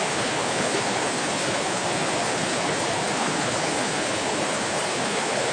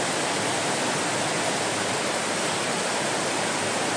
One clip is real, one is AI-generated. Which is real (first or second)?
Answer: second